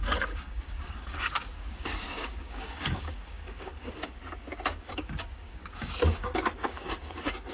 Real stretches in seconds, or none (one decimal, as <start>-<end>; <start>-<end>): 4.2-4.9